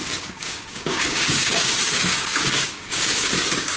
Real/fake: fake